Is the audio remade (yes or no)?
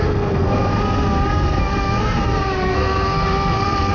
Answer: yes